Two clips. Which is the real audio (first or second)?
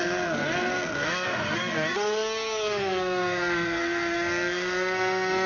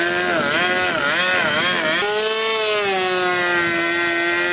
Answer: second